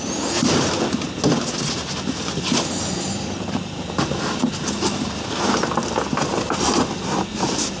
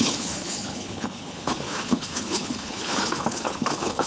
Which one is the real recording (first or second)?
first